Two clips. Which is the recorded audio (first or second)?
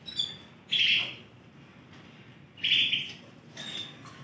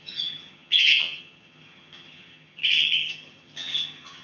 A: first